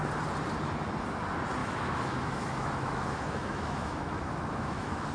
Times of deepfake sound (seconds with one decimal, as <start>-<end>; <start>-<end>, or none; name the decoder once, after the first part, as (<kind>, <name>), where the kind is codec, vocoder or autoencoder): 1.6-5.1 (autoencoder, DAC-VAE)